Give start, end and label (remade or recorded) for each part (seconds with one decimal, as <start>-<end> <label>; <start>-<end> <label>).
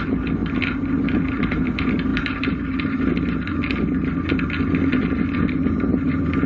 0.0-6.5 recorded